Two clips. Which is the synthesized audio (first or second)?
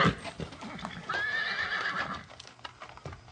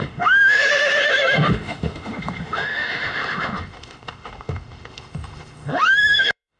second